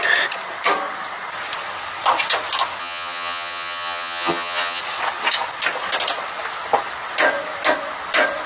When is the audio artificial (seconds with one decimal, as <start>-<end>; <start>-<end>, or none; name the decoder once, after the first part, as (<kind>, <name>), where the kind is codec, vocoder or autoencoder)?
2.8-4.8 (vocoder, HiFi-GAN)